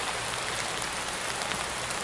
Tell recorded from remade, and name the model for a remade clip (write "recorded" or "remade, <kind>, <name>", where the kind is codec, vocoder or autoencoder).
recorded